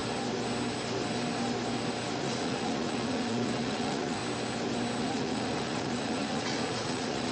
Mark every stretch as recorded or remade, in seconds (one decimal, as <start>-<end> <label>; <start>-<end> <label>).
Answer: 0.0-2.2 recorded; 2.2-4.2 remade; 4.2-5.0 recorded; 5.0-7.3 remade